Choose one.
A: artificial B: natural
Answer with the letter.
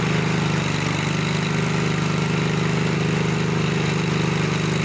B